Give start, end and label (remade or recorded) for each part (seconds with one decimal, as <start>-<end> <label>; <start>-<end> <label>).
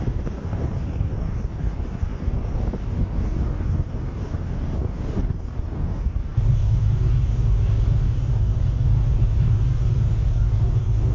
0.0-11.1 remade